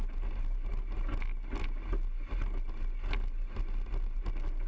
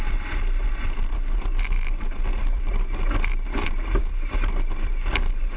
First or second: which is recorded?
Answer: first